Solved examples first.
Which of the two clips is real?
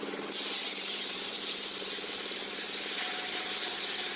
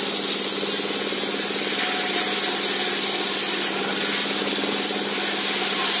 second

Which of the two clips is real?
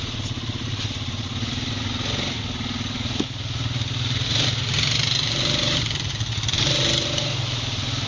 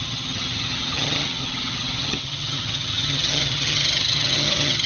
first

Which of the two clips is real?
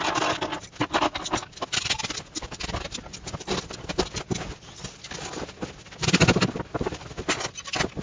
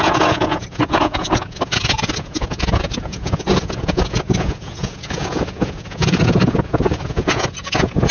first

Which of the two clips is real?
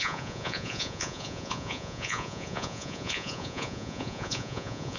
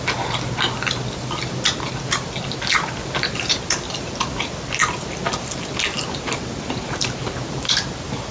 second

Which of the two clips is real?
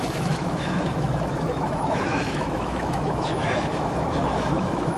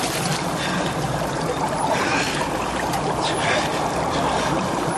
second